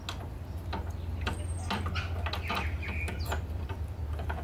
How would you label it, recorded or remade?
recorded